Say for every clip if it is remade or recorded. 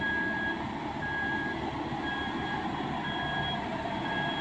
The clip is recorded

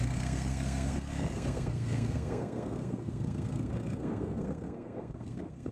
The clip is remade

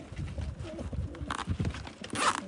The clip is recorded